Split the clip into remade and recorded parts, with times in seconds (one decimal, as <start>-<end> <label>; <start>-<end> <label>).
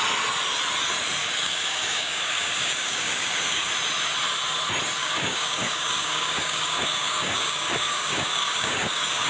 0.0-1.2 recorded; 1.2-3.7 remade; 3.7-5.0 recorded; 5.0-9.3 remade